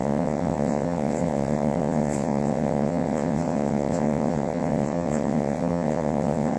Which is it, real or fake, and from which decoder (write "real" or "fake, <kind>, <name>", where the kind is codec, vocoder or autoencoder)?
fake, vocoder, WaveNeXt